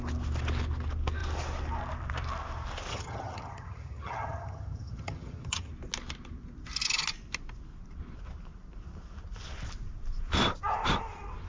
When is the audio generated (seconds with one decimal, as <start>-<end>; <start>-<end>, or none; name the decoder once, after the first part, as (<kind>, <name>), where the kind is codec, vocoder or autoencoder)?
2.9-5.7 (vocoder, HiFi-GAN)